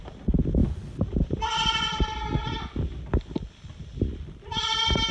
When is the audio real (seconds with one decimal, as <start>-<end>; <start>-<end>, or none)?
0.0-5.1